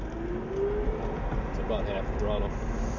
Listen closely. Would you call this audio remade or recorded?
recorded